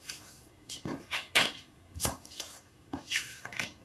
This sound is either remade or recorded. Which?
remade